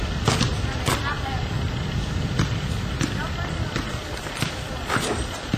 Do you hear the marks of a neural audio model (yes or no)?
no